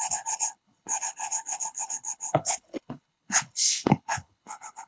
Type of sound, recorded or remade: remade